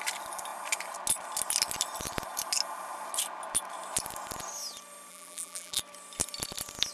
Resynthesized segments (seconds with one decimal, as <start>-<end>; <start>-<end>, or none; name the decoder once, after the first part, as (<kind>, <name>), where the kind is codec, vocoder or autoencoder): 5.1-5.8 (vocoder, BigVGAN v2)